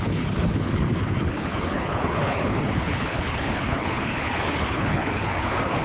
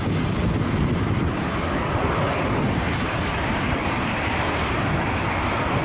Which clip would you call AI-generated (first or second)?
first